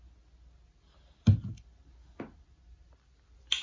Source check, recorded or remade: recorded